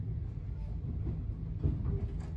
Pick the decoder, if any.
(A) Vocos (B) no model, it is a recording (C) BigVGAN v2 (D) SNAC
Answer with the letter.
B